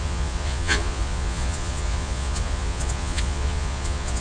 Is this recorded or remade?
remade